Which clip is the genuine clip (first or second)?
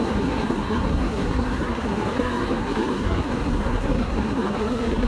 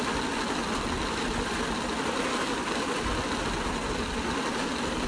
second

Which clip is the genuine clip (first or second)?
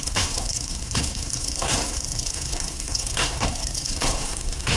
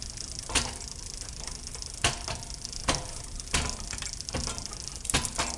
second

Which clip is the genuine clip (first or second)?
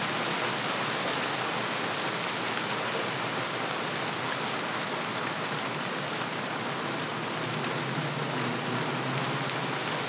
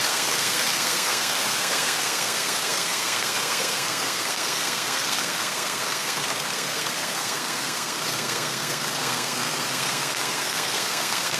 first